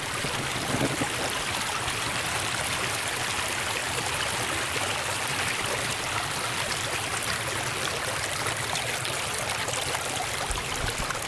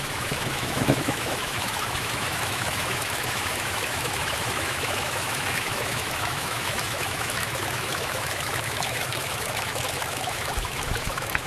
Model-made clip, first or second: second